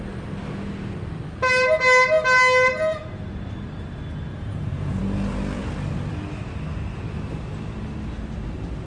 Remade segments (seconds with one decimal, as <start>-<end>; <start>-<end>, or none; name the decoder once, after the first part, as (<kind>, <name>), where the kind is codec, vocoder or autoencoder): 4.3-5.0 (vocoder, Vocos)